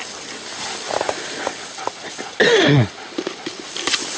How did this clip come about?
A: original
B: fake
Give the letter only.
A